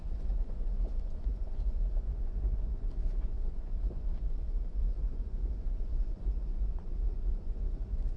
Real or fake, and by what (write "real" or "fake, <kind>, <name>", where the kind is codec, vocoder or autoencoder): fake, vocoder, Vocos